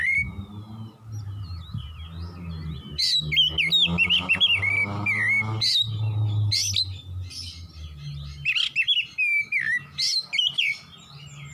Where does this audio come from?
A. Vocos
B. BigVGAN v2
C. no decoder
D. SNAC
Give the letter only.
C